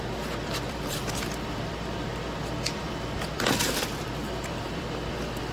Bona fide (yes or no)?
no